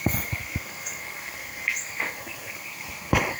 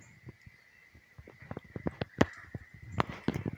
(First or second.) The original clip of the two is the second